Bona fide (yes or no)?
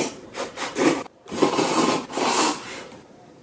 no